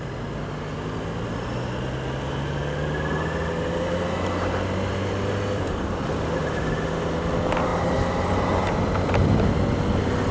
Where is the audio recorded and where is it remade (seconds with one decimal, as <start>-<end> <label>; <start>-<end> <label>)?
0.0-7.7 recorded; 7.7-8.3 remade; 8.3-10.3 recorded